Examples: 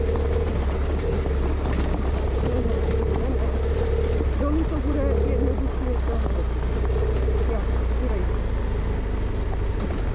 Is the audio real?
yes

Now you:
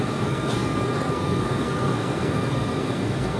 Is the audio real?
no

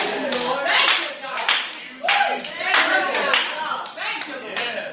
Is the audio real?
yes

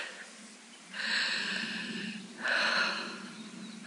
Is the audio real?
yes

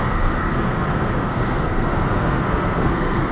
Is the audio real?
no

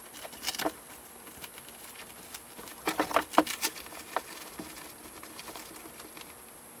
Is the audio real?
yes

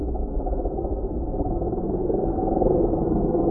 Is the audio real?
no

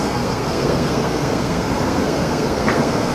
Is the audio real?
no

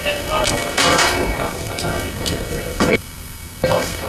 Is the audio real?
no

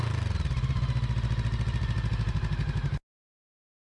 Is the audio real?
yes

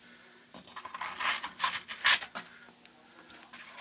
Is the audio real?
yes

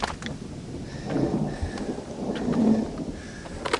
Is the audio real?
yes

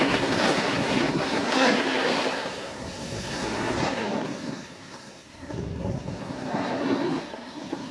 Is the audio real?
no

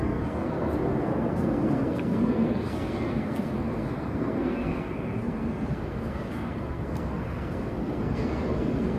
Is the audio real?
no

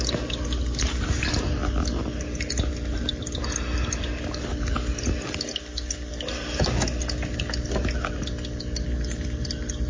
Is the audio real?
yes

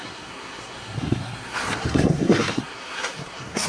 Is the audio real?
no